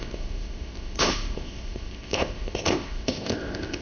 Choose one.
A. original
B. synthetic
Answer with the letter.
B